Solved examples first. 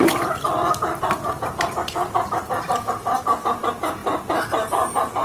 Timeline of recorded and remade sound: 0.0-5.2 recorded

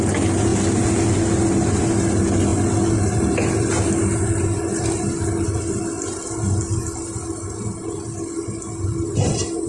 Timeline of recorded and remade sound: 0.0-9.7 recorded

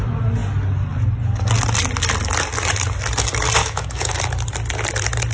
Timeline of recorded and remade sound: 0.0-3.6 recorded; 3.6-4.2 remade; 4.2-5.3 recorded

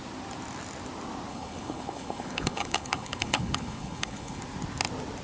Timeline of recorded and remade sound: 0.0-1.3 recorded; 1.3-4.4 remade; 4.4-5.2 recorded